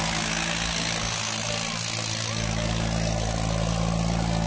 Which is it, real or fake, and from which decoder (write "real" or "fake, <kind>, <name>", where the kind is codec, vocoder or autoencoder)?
real